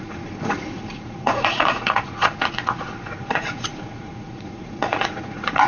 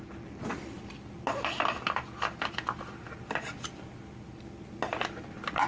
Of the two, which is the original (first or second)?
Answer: second